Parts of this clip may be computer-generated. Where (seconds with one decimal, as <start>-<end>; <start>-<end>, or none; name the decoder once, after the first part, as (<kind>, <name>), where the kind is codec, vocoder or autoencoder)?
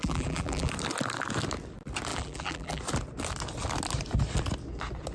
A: 0.0-0.7 (vocoder, BigVGAN v2); 2.1-2.8